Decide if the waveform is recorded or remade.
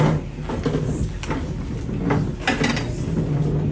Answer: recorded